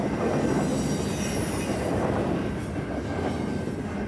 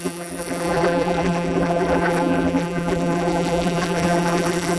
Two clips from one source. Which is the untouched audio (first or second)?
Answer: first